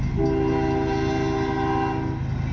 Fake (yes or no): no